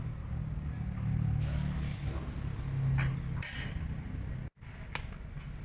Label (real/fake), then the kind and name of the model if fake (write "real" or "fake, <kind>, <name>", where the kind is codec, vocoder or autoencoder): real